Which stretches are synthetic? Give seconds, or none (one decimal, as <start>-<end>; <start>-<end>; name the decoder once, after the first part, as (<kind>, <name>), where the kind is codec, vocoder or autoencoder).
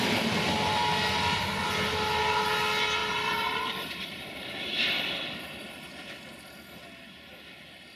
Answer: 3.0-4.9 (vocoder, BigVGAN v2)